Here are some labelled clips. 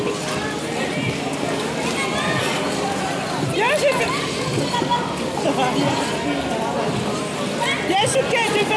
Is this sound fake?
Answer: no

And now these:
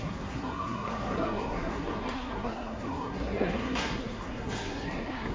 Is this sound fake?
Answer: yes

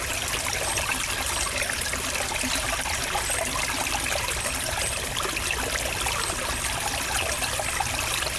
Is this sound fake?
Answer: no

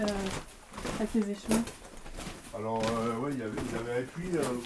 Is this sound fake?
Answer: no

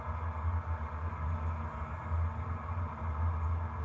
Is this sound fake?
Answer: no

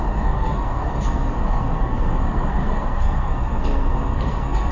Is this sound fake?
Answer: yes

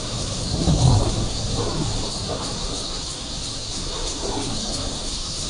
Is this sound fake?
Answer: yes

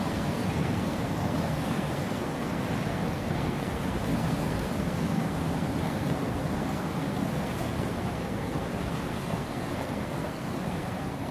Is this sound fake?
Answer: yes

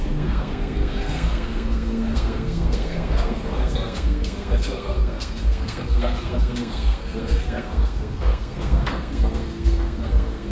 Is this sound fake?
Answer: yes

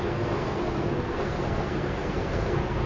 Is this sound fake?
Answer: yes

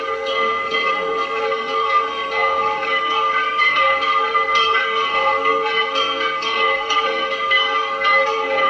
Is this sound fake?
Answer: yes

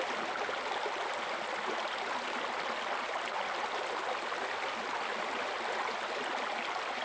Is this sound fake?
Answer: no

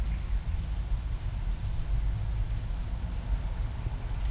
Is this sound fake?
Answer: no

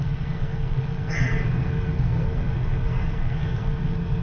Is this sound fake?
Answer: yes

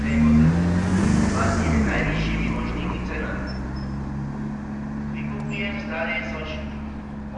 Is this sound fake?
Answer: no